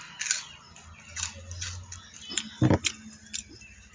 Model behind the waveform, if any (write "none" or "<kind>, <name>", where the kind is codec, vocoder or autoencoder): none